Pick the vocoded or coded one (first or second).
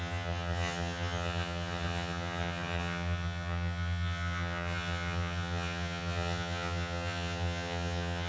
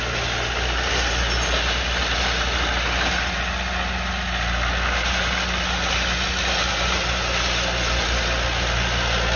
first